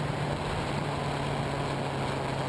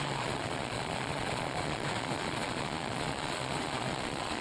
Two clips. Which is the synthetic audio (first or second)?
second